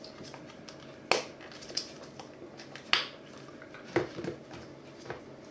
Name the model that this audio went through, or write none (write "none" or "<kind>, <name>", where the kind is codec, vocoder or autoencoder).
none